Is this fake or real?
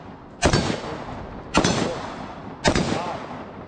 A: real